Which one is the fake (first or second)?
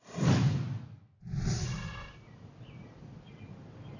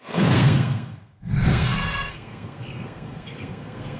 second